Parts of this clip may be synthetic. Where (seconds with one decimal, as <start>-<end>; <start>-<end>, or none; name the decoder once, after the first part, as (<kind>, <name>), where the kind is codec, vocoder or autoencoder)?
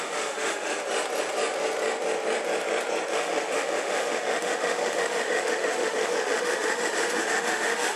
0.0-0.7 (autoencoder, DAC-VAE); 3.1-8.0